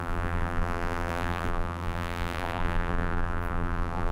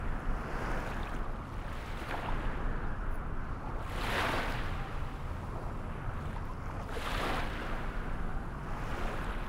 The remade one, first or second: first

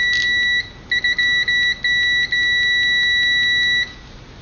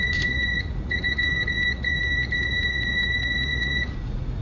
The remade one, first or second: second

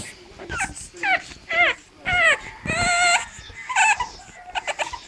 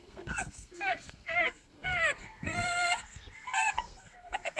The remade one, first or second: second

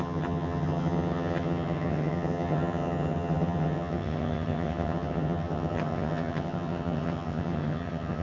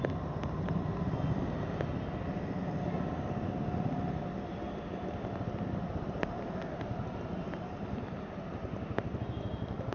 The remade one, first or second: first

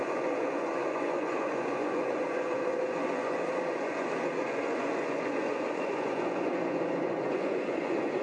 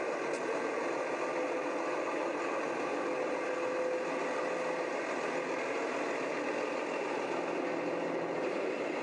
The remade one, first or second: first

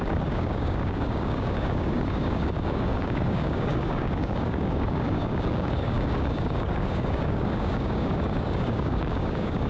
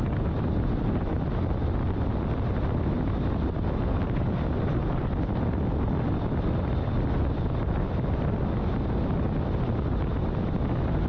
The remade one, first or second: first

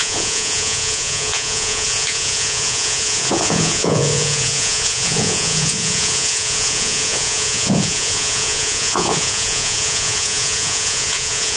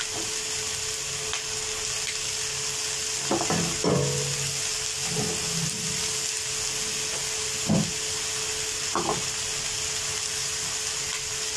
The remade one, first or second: first